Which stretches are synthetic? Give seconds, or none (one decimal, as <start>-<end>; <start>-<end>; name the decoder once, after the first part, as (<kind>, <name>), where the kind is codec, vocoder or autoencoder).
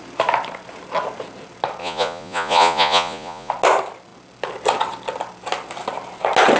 1.8-3.5 (vocoder, Vocos)